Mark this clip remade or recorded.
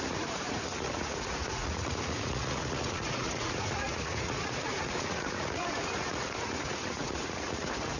remade